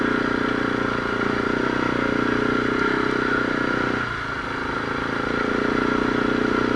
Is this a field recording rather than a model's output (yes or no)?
yes